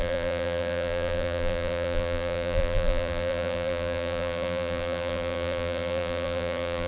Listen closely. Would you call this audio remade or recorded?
remade